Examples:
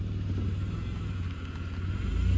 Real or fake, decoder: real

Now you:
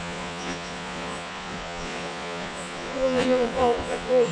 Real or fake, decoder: fake, vocoder, Vocos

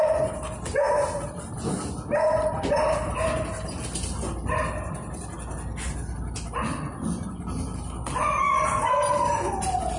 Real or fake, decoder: real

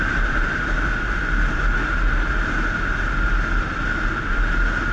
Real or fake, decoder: real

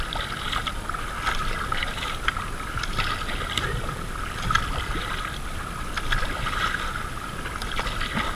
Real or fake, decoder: real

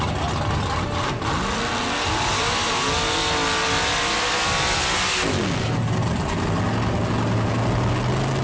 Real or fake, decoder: real